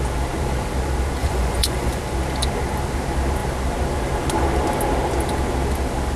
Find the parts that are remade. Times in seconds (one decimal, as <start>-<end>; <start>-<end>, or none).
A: 1.2-2.0

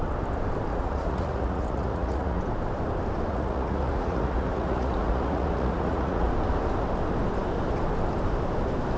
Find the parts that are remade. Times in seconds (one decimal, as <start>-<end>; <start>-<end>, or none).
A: 0.7-2.4; 3.3-6.3

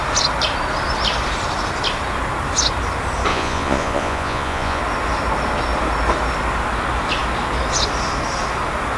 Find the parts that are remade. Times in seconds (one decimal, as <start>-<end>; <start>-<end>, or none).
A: 3.3-4.8